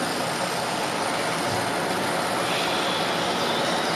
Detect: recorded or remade recorded